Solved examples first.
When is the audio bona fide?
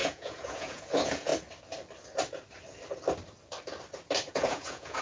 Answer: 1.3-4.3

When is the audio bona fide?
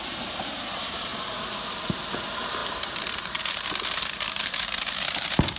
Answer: 1.1-1.8